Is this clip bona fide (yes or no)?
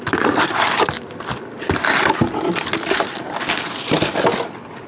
yes